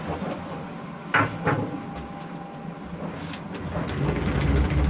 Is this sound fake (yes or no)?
no